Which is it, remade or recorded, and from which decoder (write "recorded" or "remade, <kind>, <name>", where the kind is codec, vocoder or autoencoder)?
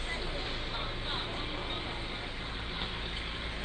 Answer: recorded